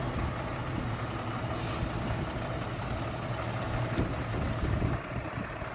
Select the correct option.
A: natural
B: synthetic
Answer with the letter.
A